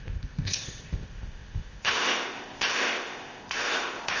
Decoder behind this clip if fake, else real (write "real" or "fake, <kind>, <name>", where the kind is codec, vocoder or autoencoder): fake, codec, ZipCodec